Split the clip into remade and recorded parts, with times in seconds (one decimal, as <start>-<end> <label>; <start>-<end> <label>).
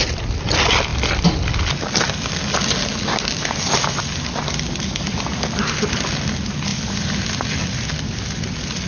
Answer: 0.0-8.9 recorded